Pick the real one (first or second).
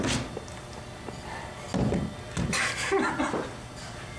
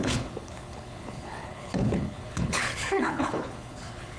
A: first